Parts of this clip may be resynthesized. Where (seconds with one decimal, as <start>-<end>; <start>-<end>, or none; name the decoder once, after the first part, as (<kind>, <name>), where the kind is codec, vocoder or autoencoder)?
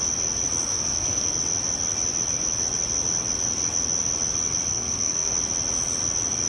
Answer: 0.7-1.3 (codec, SNAC); 4.7-5.3